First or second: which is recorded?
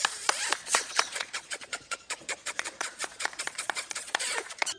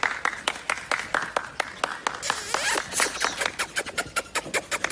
second